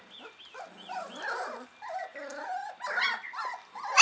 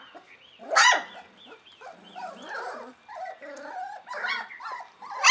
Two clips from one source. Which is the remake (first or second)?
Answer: second